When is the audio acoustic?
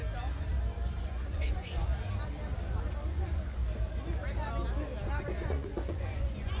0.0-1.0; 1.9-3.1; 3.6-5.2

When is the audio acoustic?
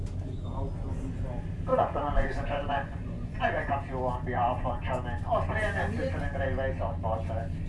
0.0-1.7; 3.7-7.7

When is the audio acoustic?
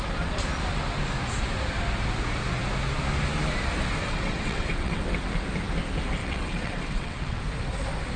0.0-4.0; 5.0-6.2; 7.4-8.2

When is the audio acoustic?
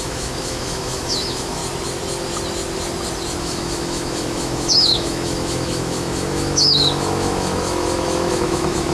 1.6-3.4